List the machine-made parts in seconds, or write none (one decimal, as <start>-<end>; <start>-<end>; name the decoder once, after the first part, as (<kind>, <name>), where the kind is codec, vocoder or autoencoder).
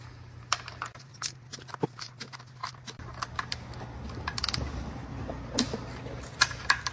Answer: none